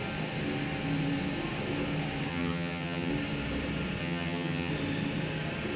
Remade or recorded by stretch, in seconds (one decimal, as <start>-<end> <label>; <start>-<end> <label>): 0.0-2.3 recorded; 2.3-3.1 remade; 3.1-4.0 recorded; 4.0-4.7 remade; 4.7-5.8 recorded